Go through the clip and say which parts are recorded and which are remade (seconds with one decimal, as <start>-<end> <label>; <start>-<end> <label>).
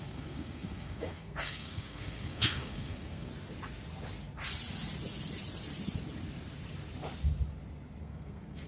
0.0-3.3 remade; 3.3-8.0 recorded; 8.0-8.7 remade